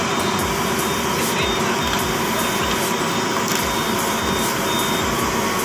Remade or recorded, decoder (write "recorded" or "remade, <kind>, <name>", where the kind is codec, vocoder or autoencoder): recorded